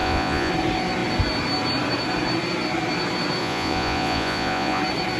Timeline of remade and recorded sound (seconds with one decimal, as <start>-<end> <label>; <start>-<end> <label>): 0.0-0.5 remade; 0.5-3.4 recorded; 3.4-4.8 remade; 4.8-5.2 recorded